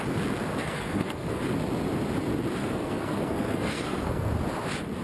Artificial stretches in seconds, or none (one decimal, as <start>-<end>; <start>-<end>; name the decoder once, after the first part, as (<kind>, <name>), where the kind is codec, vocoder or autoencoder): 0.6-1.4 (codec, SNAC); 2.6-4.3